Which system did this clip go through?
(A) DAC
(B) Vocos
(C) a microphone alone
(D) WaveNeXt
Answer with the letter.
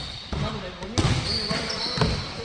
C